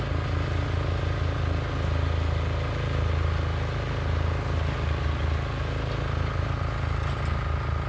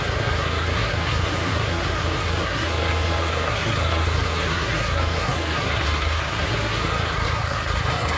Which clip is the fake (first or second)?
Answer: second